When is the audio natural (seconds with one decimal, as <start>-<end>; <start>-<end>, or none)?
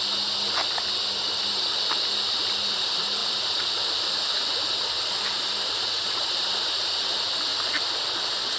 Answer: 0.0-3.2; 4.1-7.5; 8.0-8.6